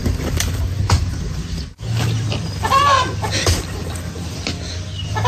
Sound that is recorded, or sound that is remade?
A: remade